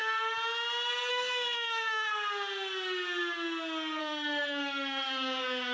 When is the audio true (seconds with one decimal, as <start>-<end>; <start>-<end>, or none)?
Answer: 0.0-1.1; 2.1-4.0